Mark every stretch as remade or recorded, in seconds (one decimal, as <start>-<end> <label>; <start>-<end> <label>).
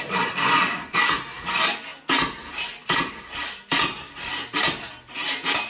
0.0-1.9 remade; 1.9-2.6 recorded; 2.6-5.7 remade